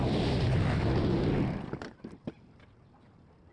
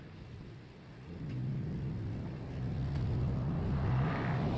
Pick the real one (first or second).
second